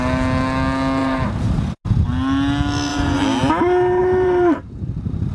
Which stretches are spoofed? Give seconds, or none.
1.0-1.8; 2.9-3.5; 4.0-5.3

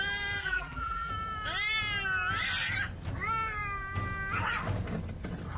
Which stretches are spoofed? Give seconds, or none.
0.4-1.1

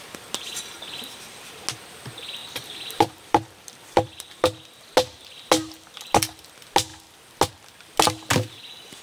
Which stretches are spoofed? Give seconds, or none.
2.4-4.4

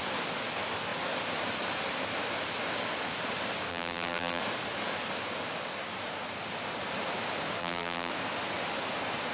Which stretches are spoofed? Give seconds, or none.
3.7-4.4; 7.6-8.1

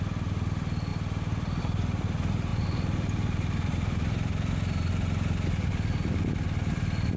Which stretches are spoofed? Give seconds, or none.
2.5-4.9

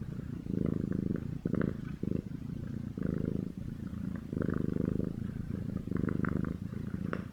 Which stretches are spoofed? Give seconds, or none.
0.0-7.3

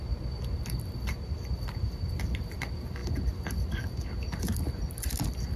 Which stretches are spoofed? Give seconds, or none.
none

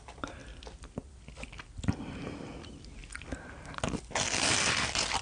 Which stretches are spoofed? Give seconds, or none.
0.0-0.4; 1.9-3.0; 3.7-5.2